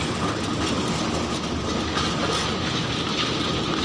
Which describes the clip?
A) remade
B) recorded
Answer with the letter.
B